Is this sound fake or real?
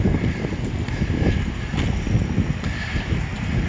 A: real